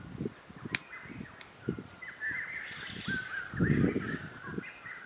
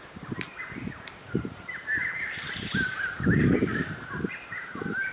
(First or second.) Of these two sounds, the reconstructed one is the second